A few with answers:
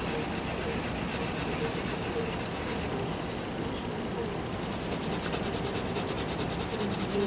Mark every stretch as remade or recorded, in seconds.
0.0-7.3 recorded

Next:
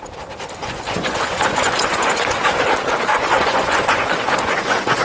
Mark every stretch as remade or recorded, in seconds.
0.0-0.6 recorded; 0.6-2.6 remade; 2.6-3.1 recorded; 3.1-5.0 remade

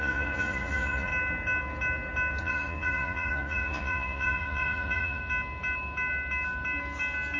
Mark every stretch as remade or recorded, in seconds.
0.0-1.1 remade; 1.1-2.4 recorded; 2.4-5.2 remade; 5.2-7.4 recorded

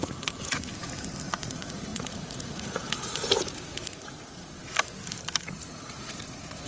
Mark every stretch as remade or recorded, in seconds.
0.0-0.7 remade; 0.7-1.5 recorded; 1.5-4.6 remade; 4.6-5.4 recorded; 5.4-6.7 remade

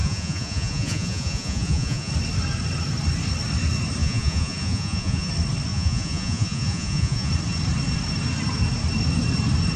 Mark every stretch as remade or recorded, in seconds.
0.0-2.1 remade; 2.1-4.0 recorded; 4.0-5.3 remade; 5.3-5.7 recorded; 5.7-7.3 remade; 7.3-9.8 recorded

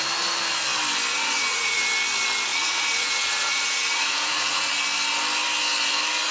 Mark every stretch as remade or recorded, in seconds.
0.0-1.1 recorded; 1.1-1.8 remade; 1.8-2.5 recorded; 2.5-4.8 remade; 4.8-6.3 recorded

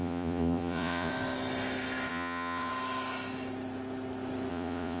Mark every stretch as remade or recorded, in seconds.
0.0-1.1 remade; 1.1-2.1 recorded; 2.1-2.7 remade; 2.7-4.5 recorded; 4.5-5.0 remade

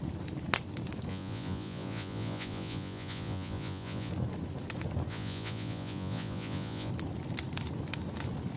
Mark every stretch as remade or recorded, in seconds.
0.0-1.1 recorded; 1.1-4.1 remade; 4.1-5.1 recorded; 5.1-6.9 remade; 6.9-8.6 recorded